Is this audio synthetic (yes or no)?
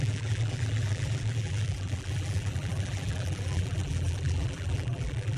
yes